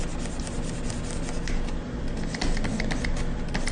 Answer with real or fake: real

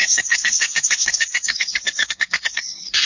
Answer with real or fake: fake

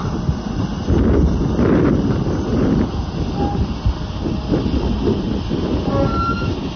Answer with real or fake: real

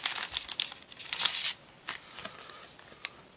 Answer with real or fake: real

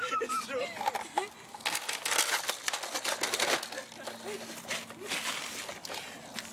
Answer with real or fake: real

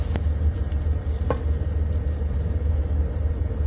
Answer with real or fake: real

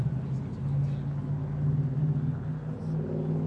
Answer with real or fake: real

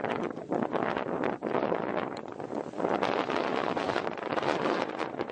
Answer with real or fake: fake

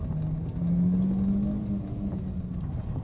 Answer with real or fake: real